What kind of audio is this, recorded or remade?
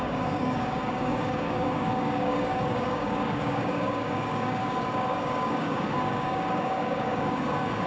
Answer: remade